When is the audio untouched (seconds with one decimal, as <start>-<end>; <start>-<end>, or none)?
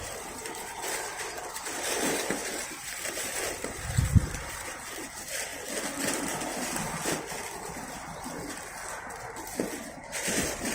5.5-9.8